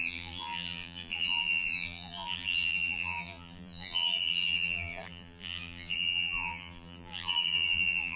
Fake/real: fake